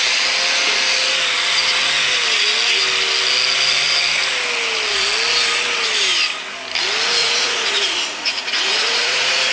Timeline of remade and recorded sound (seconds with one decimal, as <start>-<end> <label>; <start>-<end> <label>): 0.0-7.2 recorded; 7.2-9.5 remade